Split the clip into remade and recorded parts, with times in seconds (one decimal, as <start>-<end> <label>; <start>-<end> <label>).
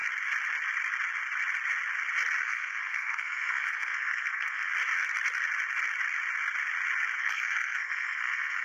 0.0-2.4 recorded; 2.4-4.7 remade; 4.7-7.2 recorded; 7.2-8.6 remade